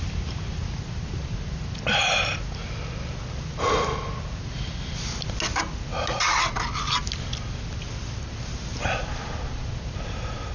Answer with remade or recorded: recorded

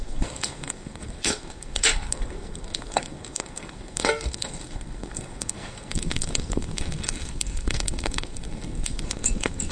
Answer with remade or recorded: remade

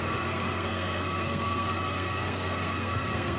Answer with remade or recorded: remade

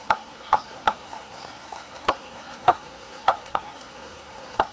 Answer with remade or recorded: remade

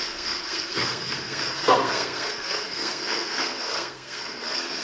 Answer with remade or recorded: remade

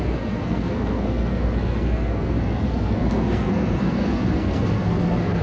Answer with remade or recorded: remade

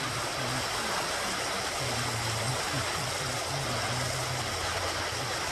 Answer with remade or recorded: recorded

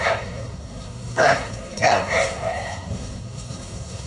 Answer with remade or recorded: remade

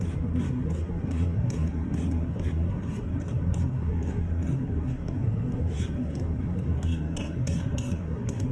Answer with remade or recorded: remade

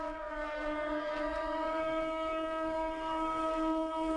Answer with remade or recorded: remade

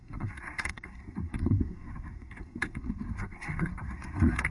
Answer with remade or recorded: remade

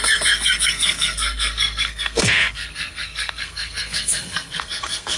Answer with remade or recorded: remade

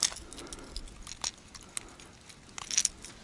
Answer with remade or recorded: recorded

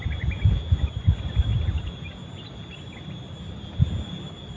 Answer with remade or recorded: recorded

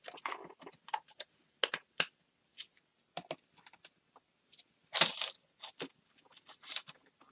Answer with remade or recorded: recorded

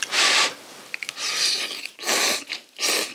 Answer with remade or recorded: recorded